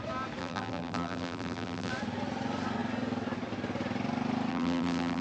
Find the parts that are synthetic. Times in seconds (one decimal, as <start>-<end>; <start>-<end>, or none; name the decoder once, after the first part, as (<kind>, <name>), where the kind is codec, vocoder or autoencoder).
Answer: 0.4-1.9 (vocoder, BigVGAN v2); 4.5-5.2